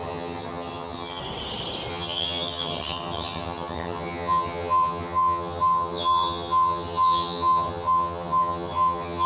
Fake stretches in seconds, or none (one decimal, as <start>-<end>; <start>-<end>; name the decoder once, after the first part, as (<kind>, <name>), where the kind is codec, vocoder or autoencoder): 0.0-1.2 (vocoder, HiFi-GAN); 1.9-9.3